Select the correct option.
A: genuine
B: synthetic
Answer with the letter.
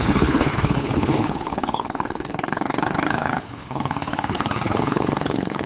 B